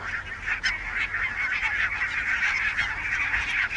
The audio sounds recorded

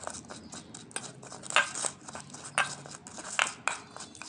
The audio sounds recorded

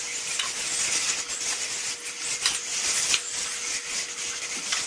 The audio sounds recorded